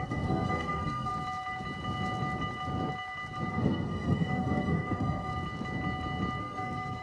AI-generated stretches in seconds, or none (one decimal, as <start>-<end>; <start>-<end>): 0.0-1.1; 3.5-5.3; 6.4-7.0